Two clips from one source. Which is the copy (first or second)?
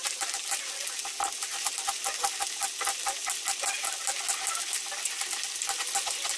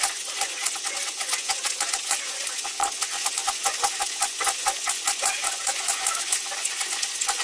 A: second